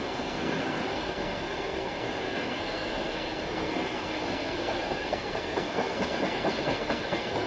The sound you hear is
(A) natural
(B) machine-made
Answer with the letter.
B